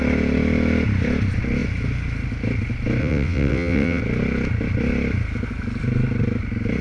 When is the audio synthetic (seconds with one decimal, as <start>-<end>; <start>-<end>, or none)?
3.0-4.0